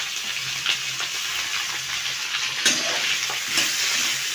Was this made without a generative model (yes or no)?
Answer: yes